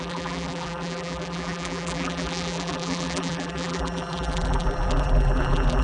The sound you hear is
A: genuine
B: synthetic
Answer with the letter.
B